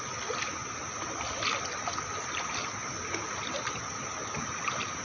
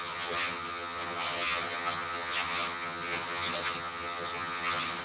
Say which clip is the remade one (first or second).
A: second